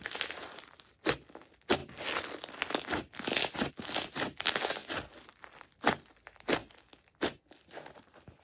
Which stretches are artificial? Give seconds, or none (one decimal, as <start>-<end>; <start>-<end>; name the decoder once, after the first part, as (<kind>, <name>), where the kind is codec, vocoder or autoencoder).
none